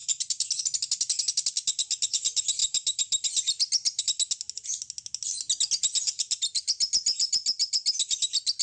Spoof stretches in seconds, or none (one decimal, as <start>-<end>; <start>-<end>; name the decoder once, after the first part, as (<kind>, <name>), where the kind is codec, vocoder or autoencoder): none